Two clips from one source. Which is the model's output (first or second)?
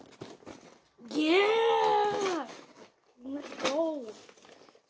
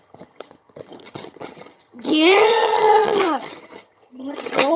second